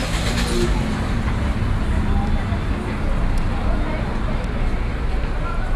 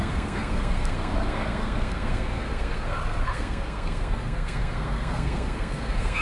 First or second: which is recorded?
first